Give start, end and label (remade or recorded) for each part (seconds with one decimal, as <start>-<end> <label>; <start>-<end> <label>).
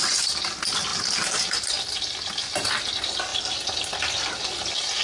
0.0-5.0 recorded